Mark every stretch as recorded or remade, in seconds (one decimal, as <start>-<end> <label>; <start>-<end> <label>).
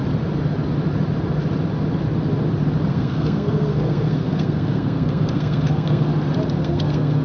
0.0-2.9 recorded; 2.9-6.1 remade; 6.1-6.6 recorded; 6.6-7.2 remade